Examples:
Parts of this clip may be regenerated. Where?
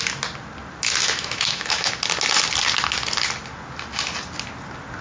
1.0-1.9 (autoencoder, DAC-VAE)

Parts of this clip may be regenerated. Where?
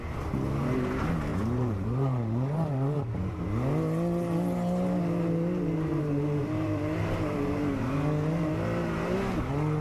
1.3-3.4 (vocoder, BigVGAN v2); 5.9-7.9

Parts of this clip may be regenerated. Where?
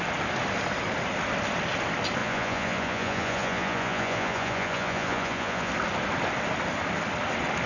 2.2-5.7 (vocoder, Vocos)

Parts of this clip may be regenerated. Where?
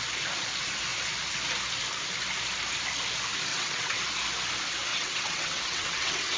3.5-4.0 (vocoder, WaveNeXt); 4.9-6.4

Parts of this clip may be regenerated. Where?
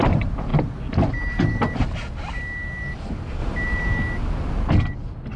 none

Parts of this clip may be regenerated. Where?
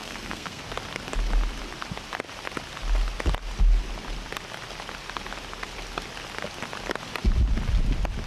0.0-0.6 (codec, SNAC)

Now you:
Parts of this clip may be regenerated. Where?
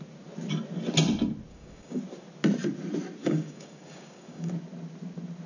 1.5-2.0 (codec, DAC); 3.2-4.5